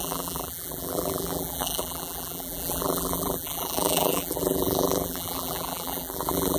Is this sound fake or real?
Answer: fake